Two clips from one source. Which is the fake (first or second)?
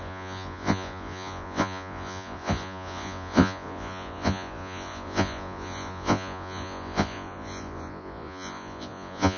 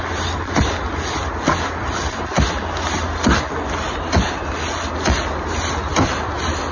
first